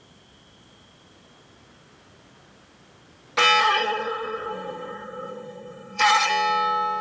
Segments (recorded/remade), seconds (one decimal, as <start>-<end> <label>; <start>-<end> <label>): 0.0-3.6 recorded; 3.6-6.3 remade; 6.3-7.0 recorded